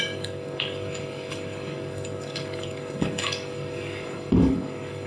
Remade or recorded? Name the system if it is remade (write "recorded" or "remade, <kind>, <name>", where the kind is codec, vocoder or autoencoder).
remade, codec, DAC